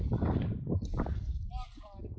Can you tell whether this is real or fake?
fake